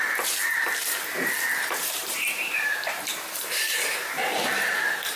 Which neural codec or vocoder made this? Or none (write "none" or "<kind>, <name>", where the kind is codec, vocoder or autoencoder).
vocoder, BigVGAN v2